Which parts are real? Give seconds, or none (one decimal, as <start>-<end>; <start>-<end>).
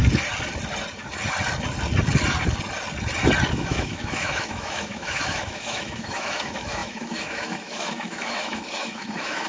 0.0-3.5